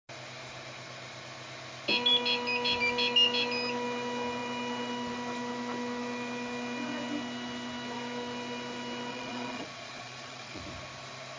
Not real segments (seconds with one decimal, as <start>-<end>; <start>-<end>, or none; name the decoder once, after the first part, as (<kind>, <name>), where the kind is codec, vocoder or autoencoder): 9.1-10.6 (vocoder, Vocos)